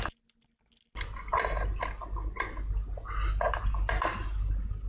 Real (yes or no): yes